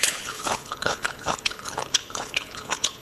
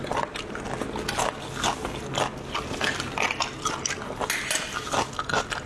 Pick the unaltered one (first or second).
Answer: second